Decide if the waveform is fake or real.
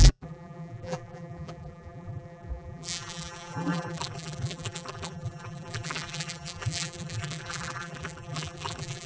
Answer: fake